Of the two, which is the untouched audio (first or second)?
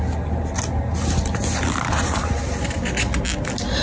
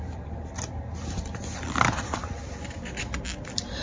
first